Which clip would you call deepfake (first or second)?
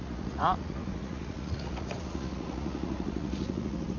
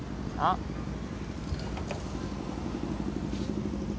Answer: first